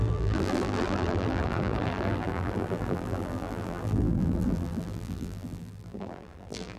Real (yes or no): no